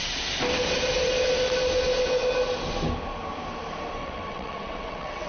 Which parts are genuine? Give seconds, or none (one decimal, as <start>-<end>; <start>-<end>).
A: 0.0-4.0